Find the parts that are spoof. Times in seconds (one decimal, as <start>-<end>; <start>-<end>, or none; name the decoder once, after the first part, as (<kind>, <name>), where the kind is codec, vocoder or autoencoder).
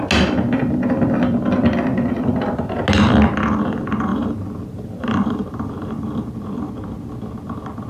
4.1-6.3 (vocoder, BigVGAN v2)